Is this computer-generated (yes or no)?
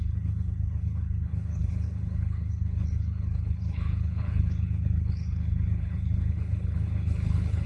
yes